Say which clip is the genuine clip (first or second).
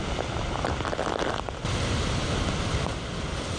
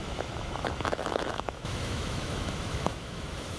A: first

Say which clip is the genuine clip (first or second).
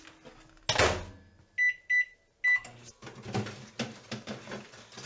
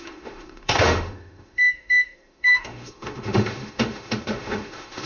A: first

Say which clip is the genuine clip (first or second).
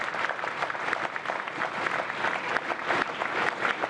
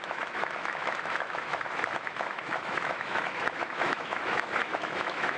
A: first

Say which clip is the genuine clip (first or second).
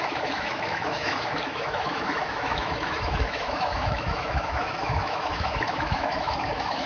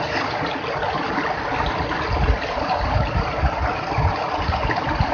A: second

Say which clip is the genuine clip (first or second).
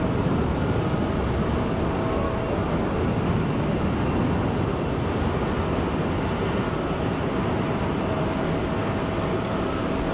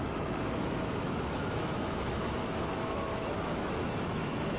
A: first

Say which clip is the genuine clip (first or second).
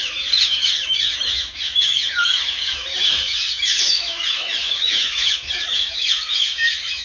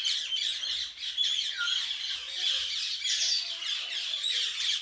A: second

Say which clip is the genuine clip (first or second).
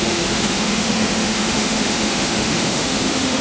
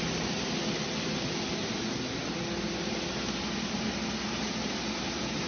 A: second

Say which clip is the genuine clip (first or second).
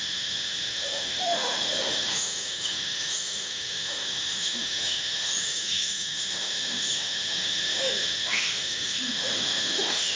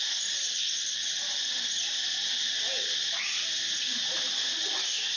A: second